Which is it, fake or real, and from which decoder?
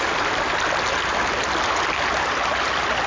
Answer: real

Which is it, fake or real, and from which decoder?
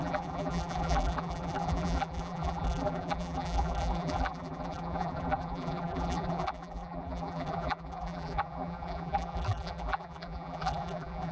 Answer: fake, vocoder, BigVGAN v2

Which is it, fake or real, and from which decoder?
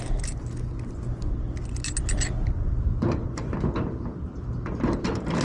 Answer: real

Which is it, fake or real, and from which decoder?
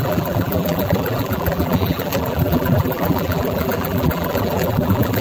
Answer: fake, vocoder, BigVGAN v2